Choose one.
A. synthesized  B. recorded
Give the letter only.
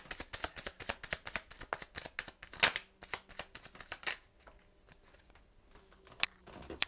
B